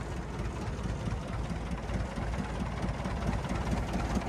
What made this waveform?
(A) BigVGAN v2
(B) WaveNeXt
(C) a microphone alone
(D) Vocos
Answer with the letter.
C